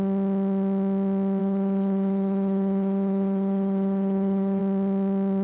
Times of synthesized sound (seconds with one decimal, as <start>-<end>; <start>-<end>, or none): 1.4-4.6